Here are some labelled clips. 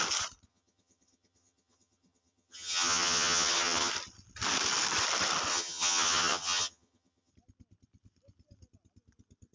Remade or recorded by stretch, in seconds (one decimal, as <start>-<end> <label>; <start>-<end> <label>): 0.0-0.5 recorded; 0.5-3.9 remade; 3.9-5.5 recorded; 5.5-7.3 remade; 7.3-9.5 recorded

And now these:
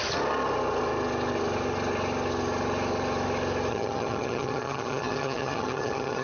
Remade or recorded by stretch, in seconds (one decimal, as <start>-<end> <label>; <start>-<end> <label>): 0.0-3.7 recorded; 3.7-6.2 remade

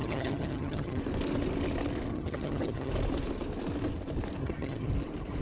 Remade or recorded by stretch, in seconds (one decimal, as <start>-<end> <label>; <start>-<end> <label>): 0.0-1.0 remade; 1.0-2.1 recorded; 2.1-2.9 remade; 2.9-4.4 recorded; 4.4-4.9 remade; 4.9-5.4 recorded

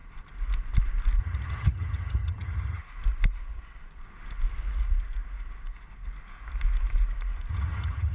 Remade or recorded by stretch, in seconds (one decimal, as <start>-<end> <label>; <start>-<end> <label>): 0.0-1.2 recorded; 1.2-2.8 remade; 2.8-7.5 recorded; 7.5-8.1 remade

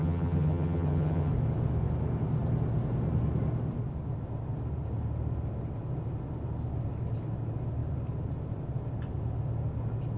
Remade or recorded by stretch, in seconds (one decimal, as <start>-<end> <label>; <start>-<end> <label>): 0.0-1.3 remade; 1.3-10.2 recorded

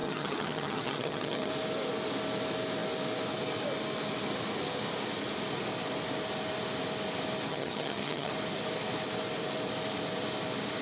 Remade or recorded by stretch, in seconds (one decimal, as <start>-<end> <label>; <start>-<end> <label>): 0.0-1.5 remade; 1.5-7.5 recorded; 7.5-8.3 remade; 8.3-10.8 recorded

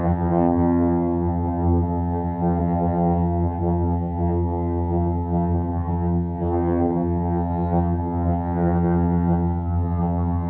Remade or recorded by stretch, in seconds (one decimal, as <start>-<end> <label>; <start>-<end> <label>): 0.0-10.5 remade

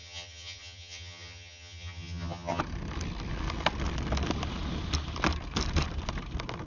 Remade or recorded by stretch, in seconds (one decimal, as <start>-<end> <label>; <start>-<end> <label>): 0.0-2.6 remade; 2.6-6.7 recorded